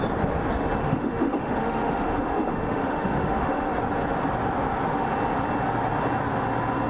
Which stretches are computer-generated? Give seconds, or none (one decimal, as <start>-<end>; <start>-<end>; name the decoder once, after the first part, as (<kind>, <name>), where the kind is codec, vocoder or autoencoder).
0.8-3.7 (autoencoder, DAC-VAE)